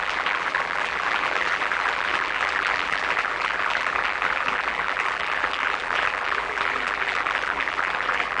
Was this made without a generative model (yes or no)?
no